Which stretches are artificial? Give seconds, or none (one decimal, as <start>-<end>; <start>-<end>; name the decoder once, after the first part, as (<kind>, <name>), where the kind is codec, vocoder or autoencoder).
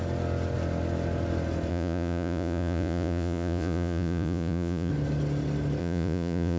1.7-4.9 (vocoder, Vocos); 5.8-6.6